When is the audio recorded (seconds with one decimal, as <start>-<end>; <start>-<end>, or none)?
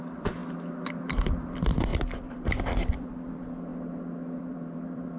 0.4-0.9; 3.7-4.4